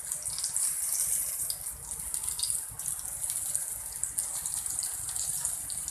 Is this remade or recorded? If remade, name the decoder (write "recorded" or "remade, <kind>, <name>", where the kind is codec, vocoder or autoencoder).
recorded